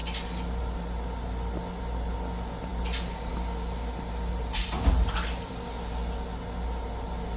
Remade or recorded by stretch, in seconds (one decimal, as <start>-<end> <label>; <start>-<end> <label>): 0.0-7.4 recorded

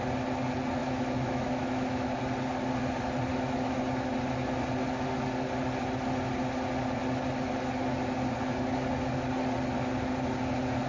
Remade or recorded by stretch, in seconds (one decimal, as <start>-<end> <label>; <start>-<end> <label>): 0.0-0.8 recorded; 0.8-2.2 remade; 2.2-3.3 recorded; 3.3-3.8 remade; 3.8-10.9 recorded

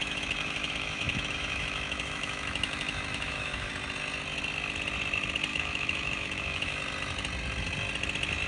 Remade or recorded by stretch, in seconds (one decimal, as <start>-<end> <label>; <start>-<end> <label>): 0.0-3.7 remade; 3.7-5.5 recorded; 5.5-6.8 remade; 6.8-8.5 recorded

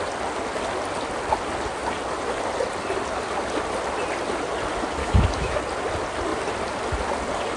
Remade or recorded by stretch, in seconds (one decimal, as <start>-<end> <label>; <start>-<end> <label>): 0.0-5.0 recorded; 5.0-5.6 remade; 5.6-7.6 recorded

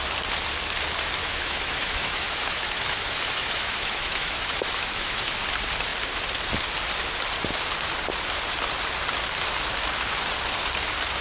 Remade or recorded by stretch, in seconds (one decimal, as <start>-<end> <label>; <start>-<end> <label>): 0.0-1.2 recorded; 1.2-5.4 remade; 5.4-11.2 recorded

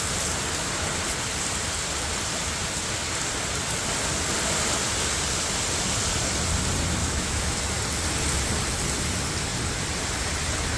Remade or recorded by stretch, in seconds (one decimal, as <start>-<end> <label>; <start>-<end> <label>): 0.0-7.0 recorded; 7.0-7.6 remade; 7.6-10.8 recorded

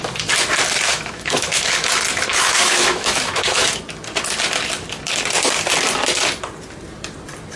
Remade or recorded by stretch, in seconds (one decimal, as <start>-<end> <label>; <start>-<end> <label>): 0.0-0.9 recorded; 0.9-1.9 remade; 1.9-2.3 recorded; 2.3-3.8 remade; 3.8-7.6 recorded